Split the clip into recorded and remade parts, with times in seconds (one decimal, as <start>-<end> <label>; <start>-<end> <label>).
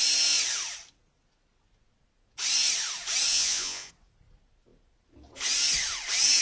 0.0-3.3 recorded; 3.3-3.9 remade; 3.9-6.4 recorded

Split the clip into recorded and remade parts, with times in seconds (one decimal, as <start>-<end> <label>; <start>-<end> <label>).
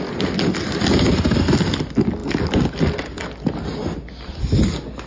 0.0-5.1 recorded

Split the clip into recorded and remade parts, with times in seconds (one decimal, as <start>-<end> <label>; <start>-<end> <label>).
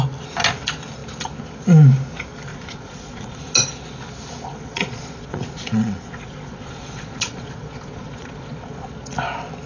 0.0-2.5 recorded; 2.5-3.4 remade; 3.4-4.5 recorded; 4.5-8.9 remade; 8.9-9.7 recorded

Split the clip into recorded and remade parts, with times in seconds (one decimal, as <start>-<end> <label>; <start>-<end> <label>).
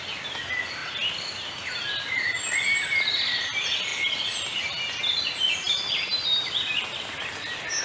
0.0-7.8 recorded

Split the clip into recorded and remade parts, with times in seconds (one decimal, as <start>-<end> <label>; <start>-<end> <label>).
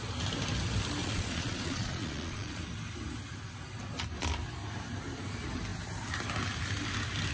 0.0-1.0 recorded; 1.0-2.6 remade; 2.6-7.3 recorded